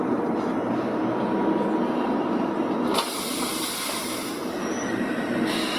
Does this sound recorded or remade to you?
recorded